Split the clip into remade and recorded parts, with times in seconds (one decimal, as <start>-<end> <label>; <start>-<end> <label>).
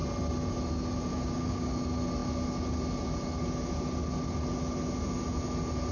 0.0-1.1 recorded; 1.1-1.7 remade; 1.7-5.9 recorded